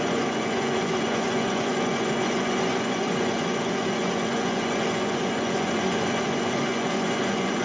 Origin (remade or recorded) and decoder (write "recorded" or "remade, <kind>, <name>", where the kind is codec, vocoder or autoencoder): remade, vocoder, Vocos